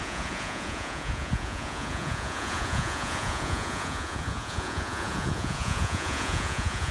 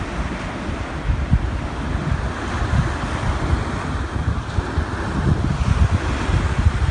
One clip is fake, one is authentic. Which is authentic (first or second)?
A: second